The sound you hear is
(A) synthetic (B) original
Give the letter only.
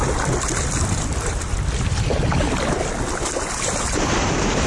A